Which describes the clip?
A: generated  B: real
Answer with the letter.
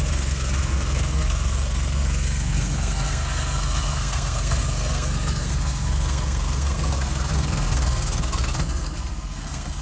A